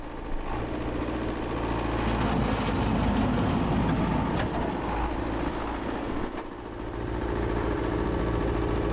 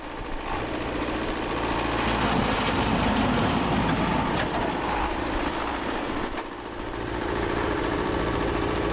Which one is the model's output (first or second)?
second